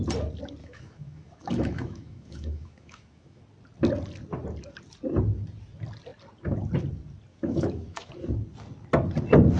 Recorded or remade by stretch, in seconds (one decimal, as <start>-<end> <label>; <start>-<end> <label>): 0.0-0.6 recorded; 0.6-3.4 remade; 3.4-7.3 recorded; 7.3-8.1 remade; 8.1-9.6 recorded